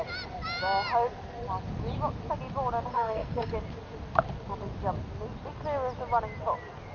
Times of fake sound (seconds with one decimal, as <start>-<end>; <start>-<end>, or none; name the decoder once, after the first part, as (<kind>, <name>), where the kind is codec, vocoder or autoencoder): 2.9-3.5 (codec, SNAC)

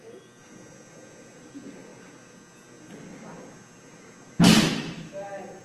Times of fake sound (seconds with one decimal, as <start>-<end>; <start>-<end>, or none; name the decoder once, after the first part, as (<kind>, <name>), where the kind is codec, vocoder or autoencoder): none

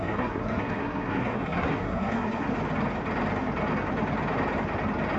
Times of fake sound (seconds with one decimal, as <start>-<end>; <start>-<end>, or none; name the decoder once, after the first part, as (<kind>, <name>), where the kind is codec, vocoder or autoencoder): 0.0-2.5 (codec, SNAC)

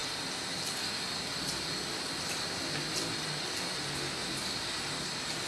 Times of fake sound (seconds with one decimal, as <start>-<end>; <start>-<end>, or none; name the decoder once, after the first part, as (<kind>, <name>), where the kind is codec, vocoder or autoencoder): none

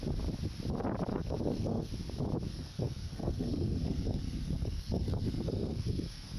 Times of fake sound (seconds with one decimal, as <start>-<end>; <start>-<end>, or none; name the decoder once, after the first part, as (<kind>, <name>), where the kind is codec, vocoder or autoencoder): 1.1-1.9 (codec, SNAC); 2.5-6.4